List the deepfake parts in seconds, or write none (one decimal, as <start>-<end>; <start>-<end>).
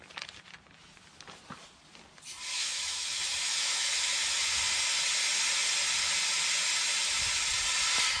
2.5-4.5